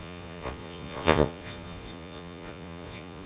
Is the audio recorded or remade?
remade